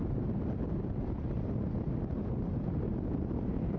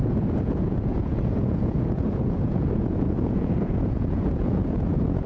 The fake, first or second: second